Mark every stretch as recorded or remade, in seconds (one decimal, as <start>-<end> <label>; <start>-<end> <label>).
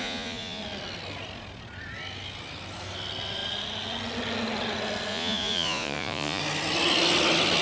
0.0-0.6 remade; 0.6-5.1 recorded; 5.1-6.4 remade; 6.4-7.6 recorded